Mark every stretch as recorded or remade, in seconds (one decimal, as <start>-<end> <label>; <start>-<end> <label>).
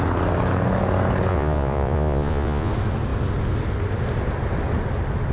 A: 0.0-1.3 recorded; 1.3-2.7 remade; 2.7-5.3 recorded